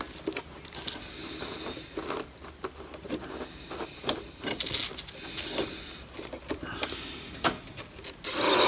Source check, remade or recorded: recorded